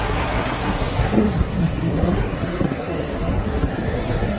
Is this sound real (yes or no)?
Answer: no